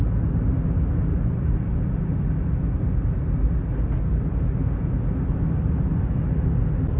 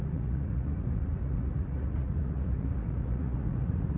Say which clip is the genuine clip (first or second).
first